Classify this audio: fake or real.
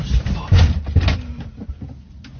real